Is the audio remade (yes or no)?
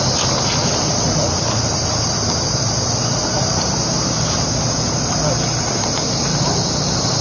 no